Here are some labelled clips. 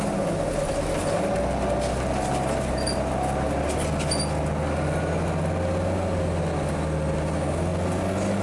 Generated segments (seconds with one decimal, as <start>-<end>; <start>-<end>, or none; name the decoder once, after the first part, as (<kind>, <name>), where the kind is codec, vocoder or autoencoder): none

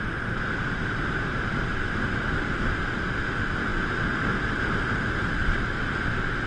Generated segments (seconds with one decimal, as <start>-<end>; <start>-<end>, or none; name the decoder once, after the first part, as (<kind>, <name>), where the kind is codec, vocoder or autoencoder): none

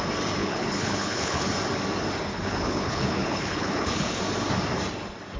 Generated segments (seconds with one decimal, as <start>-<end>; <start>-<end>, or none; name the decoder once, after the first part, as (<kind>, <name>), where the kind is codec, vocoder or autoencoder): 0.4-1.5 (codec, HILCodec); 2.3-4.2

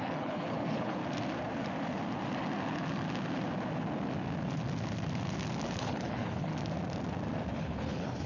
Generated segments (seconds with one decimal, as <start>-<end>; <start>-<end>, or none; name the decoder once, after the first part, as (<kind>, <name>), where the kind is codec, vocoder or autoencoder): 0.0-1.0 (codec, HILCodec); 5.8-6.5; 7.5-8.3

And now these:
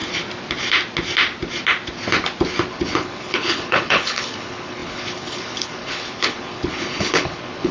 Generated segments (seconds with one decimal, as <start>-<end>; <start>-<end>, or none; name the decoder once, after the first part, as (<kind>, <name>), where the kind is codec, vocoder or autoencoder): 2.7-7.7 (codec, HILCodec)